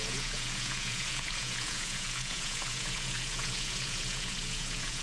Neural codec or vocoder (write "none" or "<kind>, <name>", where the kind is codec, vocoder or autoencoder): vocoder, Vocos